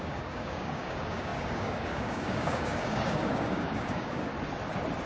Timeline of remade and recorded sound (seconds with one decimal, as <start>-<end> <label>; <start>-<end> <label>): 0.0-4.3 remade; 4.3-5.1 recorded